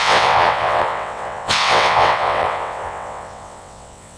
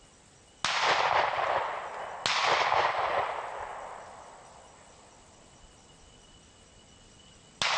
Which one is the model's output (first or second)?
first